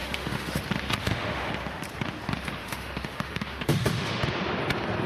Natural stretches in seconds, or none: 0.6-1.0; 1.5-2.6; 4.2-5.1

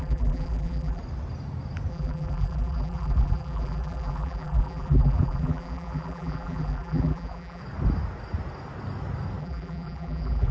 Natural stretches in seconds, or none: 1.0-1.9; 7.6-9.4

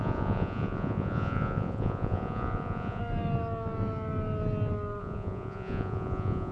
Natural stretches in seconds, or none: 3.0-5.0